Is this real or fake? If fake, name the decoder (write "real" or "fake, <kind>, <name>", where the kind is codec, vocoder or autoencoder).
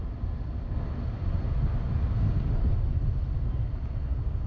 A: real